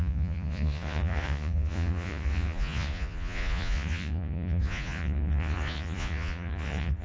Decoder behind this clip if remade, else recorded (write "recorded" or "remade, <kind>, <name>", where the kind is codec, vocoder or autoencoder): remade, vocoder, Vocos